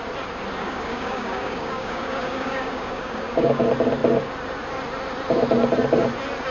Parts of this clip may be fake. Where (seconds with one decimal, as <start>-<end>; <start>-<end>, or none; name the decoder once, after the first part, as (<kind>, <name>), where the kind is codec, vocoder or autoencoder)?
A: 0.6-3.6 (codec, DAC)